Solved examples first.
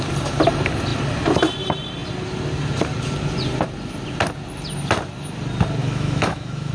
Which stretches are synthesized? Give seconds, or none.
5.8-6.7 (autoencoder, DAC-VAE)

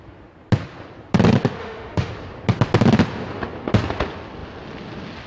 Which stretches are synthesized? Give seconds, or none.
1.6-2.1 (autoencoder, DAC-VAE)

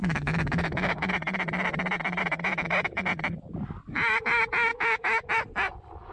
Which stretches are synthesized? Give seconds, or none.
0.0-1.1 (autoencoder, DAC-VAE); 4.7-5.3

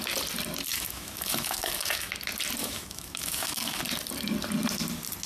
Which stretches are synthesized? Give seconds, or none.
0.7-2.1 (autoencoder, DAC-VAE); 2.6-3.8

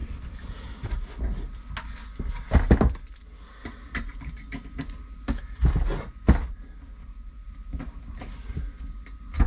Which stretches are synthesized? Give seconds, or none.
none

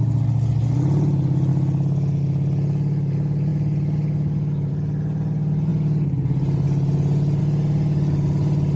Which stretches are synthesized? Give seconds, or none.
none

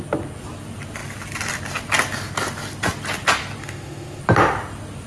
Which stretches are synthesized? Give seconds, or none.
3.6-4.2 (autoencoder, DAC-VAE)